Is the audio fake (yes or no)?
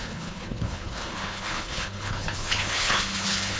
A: yes